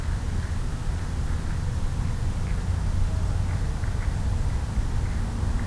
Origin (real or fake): real